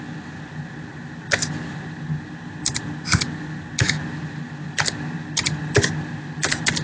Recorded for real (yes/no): yes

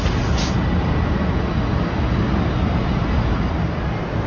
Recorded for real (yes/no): yes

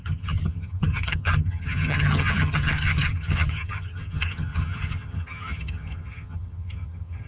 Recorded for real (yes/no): no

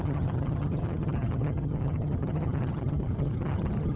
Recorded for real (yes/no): no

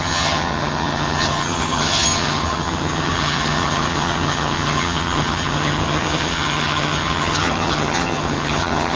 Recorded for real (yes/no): no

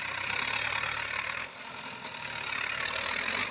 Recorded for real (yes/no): yes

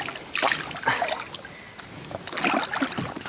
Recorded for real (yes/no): yes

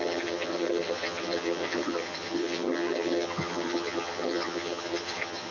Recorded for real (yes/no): no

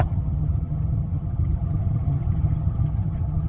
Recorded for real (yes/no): no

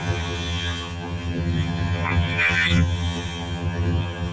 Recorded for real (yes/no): no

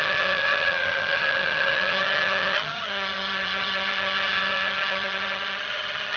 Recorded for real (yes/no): no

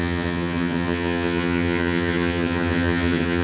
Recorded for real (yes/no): no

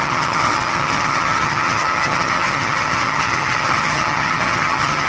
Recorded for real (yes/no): no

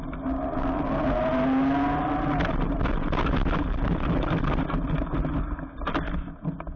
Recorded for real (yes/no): yes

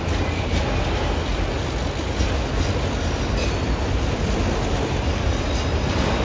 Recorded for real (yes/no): yes